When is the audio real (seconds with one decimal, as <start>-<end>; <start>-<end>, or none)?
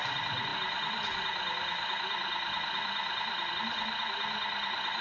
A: 0.0-5.0